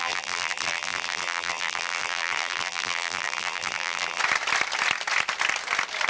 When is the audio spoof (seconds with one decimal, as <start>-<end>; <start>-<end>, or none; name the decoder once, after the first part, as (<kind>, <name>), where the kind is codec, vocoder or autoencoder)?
0.0-4.2 (vocoder, BigVGAN v2)